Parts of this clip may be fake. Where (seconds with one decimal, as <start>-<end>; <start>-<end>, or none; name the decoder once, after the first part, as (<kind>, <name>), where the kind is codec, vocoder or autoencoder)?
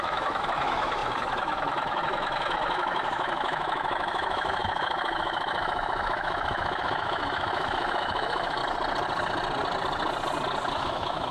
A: 0.0-8.6 (autoencoder, DAC-VAE); 10.7-11.3